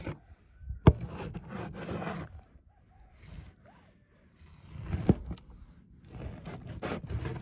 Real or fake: real